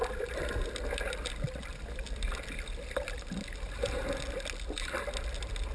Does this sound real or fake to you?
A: real